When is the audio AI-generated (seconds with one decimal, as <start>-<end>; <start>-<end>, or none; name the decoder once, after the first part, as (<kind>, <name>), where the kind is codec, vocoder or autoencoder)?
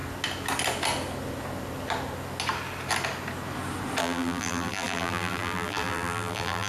4.0-6.7 (vocoder, BigVGAN v2)